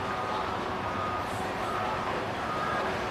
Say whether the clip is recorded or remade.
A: remade